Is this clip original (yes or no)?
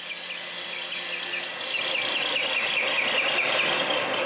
yes